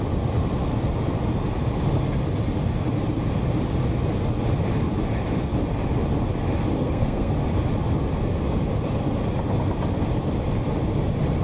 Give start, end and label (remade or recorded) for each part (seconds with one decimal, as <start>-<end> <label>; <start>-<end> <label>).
0.0-6.8 recorded; 6.8-7.3 remade; 7.3-11.4 recorded